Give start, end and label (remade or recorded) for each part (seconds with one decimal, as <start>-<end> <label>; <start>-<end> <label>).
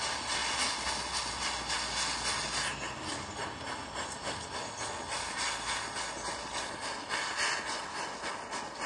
0.0-8.9 recorded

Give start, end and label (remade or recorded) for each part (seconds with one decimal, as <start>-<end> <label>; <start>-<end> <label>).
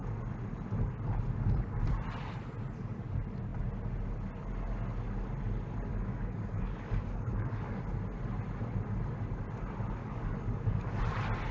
0.0-5.9 recorded; 5.9-7.8 remade; 7.8-10.0 recorded; 10.0-11.0 remade; 11.0-11.5 recorded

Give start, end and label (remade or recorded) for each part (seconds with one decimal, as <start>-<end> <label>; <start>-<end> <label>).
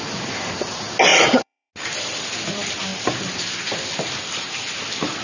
0.0-1.1 recorded; 1.1-1.7 remade; 1.7-5.2 recorded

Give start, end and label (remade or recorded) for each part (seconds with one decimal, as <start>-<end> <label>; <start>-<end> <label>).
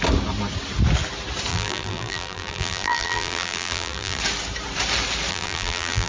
0.0-1.5 recorded; 1.5-4.2 remade; 4.2-5.3 recorded; 5.3-6.1 remade